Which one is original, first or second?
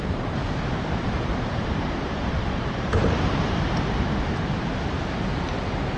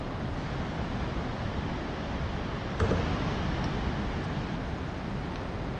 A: second